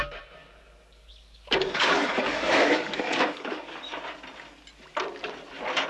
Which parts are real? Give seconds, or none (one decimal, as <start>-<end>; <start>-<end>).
0.0-0.4; 3.9-5.9